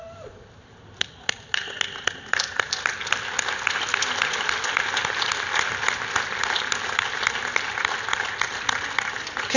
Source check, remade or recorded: recorded